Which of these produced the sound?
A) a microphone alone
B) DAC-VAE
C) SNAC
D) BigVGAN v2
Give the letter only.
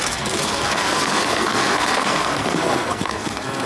C